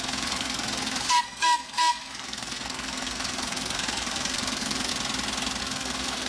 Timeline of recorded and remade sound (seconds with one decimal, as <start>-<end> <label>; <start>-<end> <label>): 0.0-4.9 remade; 4.9-5.6 recorded; 5.6-6.3 remade